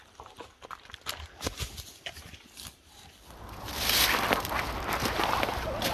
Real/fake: real